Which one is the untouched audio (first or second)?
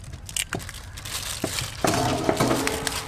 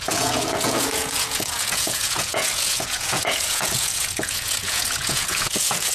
first